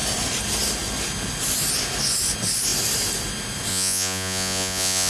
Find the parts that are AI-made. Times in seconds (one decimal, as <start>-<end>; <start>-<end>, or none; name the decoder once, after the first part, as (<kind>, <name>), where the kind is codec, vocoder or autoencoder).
3.7-5.1 (vocoder, Vocos)